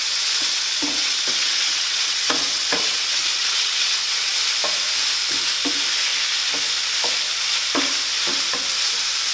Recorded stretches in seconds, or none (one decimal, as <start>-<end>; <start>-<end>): 4.3-9.3